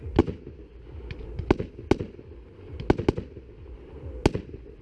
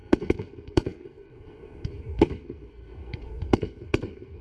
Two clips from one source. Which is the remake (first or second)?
second